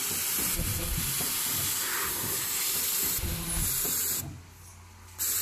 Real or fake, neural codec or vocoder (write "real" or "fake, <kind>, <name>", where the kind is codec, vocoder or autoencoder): real